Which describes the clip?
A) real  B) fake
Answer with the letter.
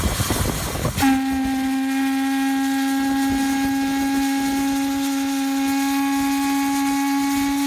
A